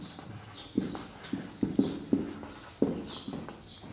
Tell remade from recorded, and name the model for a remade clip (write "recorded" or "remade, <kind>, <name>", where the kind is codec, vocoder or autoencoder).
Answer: recorded